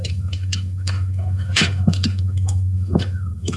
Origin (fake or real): fake